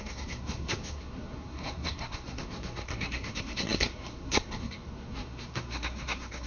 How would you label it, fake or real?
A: fake